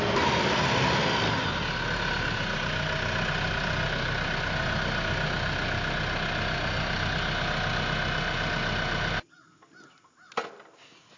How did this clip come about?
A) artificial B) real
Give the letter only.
B